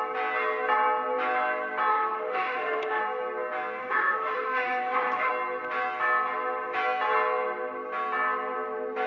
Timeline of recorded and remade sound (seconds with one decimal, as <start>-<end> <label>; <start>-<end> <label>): 0.0-1.9 recorded; 1.9-3.0 remade; 3.0-3.8 recorded; 3.8-5.3 remade; 5.3-9.1 recorded